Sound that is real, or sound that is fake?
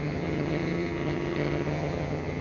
fake